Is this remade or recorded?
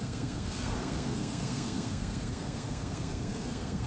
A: remade